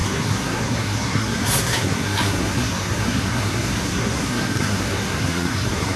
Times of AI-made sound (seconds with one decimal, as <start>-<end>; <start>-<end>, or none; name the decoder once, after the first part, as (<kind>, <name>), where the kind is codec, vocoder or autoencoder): 0.0-6.0 (codec, SNAC)